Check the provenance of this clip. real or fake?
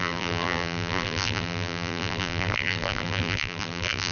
fake